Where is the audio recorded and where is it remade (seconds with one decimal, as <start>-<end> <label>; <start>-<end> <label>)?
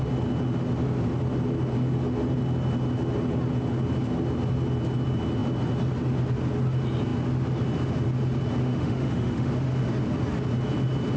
0.0-8.6 recorded; 8.6-9.5 remade; 9.5-11.2 recorded